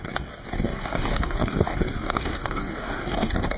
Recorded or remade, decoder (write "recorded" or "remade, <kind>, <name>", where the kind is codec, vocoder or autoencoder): remade, codec, DAC